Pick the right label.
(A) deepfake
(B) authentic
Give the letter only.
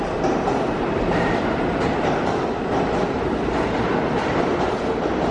B